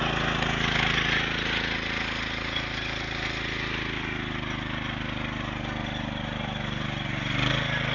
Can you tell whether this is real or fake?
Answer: real